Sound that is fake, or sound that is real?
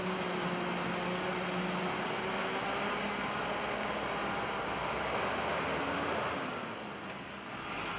real